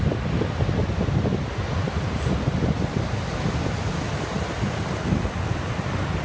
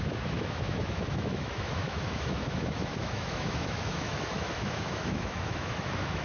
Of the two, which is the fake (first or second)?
second